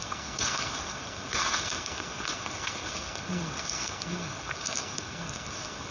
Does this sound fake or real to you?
fake